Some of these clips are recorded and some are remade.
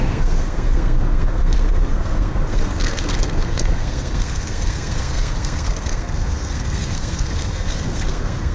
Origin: remade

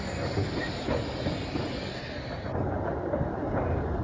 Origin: recorded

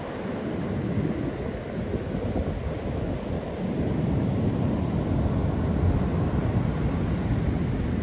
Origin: recorded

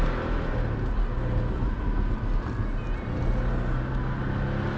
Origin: recorded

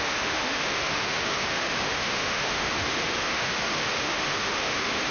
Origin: remade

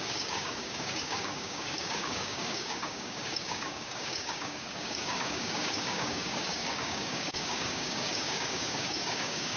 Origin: remade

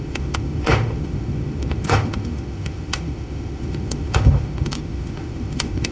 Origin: remade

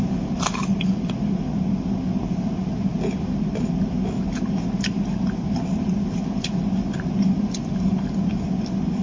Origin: recorded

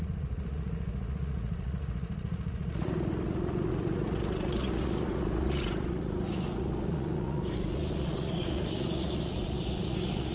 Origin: remade